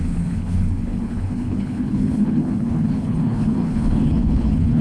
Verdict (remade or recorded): remade